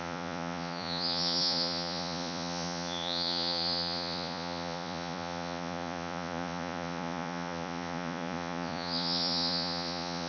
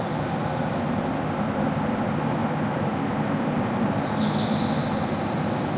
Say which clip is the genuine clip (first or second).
second